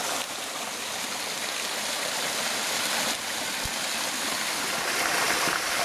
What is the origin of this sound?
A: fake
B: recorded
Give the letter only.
B